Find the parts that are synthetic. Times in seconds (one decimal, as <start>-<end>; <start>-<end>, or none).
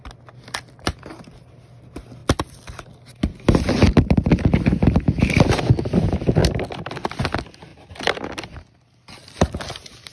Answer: none